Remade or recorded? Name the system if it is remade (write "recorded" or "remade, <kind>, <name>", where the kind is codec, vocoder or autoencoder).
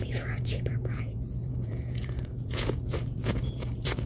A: remade, vocoder, Vocos